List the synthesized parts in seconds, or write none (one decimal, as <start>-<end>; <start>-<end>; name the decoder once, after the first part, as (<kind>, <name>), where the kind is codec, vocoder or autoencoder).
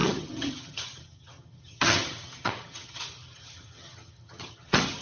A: 0.0-5.0 (vocoder, HiFi-GAN)